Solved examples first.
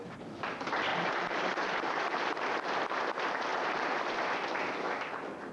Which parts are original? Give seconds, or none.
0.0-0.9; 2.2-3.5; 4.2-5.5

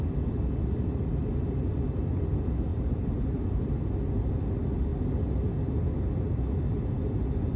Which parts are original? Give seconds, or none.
0.0-2.7; 3.7-7.6

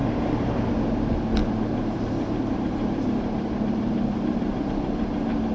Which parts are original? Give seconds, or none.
0.7-1.4; 4.7-5.5

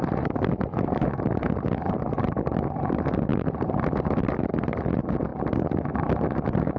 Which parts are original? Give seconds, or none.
none